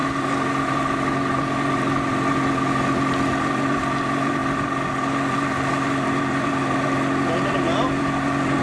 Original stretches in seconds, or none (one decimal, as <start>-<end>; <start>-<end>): 0.0-8.6